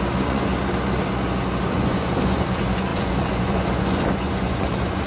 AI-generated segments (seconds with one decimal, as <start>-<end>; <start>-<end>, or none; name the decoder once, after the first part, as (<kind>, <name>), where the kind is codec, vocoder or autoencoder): 0.0-0.5 (vocoder, Vocos); 1.6-5.1